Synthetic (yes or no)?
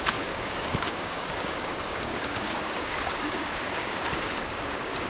yes